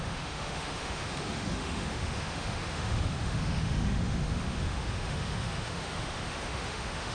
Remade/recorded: remade